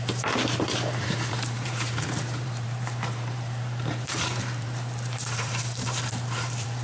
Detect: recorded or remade remade